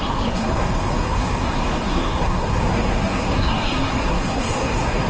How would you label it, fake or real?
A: fake